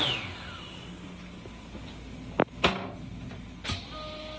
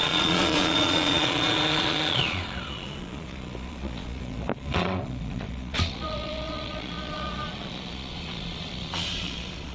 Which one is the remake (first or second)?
second